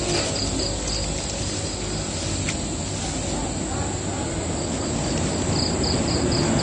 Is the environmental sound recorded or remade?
recorded